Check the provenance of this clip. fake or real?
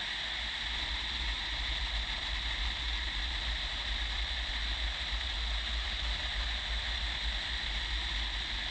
real